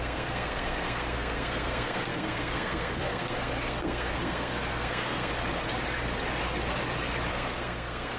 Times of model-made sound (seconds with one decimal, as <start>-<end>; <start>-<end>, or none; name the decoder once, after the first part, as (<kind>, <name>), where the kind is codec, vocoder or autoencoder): 0.0-5.3 (codec, SNAC); 7.3-8.2